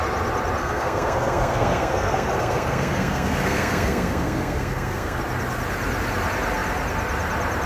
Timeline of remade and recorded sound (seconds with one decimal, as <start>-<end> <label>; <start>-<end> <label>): 0.0-0.6 recorded; 0.6-5.2 remade; 5.2-7.7 recorded